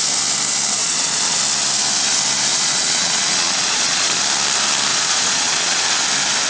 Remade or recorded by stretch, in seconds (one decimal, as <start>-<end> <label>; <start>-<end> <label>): 0.0-0.8 recorded; 0.8-1.4 remade; 1.4-2.5 recorded; 2.5-4.2 remade; 4.2-4.9 recorded; 4.9-6.0 remade; 6.0-6.5 recorded

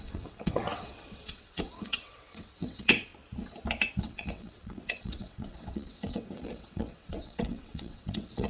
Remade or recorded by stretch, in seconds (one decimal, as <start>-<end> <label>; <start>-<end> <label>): 0.0-3.1 remade; 3.1-4.0 recorded; 4.0-8.5 remade